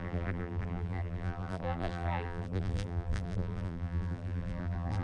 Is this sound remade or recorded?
remade